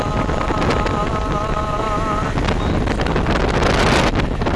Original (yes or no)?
yes